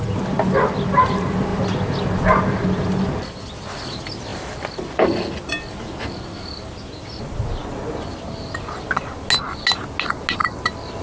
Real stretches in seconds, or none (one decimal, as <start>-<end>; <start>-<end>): 0.0-4.3; 5.0-7.6; 8.2-10.4